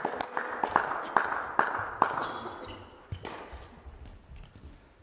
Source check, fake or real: real